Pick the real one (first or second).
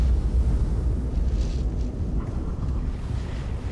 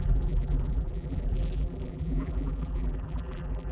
first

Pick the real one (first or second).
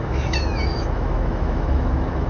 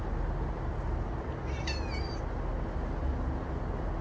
second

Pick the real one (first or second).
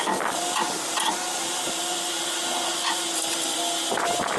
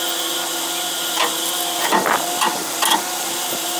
second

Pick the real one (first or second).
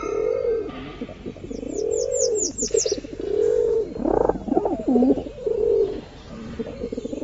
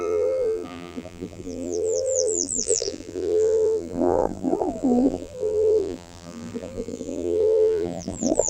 first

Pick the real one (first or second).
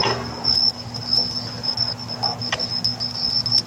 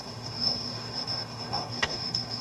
first